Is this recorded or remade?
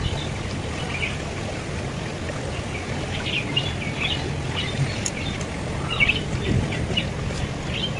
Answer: recorded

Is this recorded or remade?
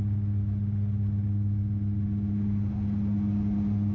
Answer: recorded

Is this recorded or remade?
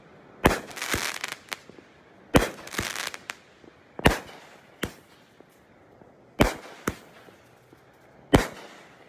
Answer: recorded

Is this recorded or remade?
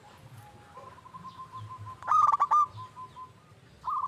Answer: recorded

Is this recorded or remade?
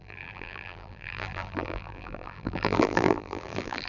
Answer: remade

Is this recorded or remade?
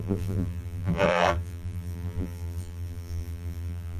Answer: remade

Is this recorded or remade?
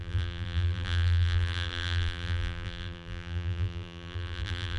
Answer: remade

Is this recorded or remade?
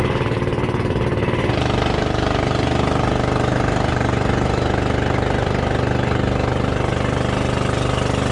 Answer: recorded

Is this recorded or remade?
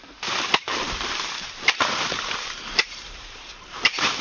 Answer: remade